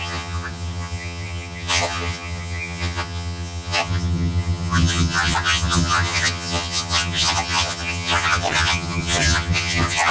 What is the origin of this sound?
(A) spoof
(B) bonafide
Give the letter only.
A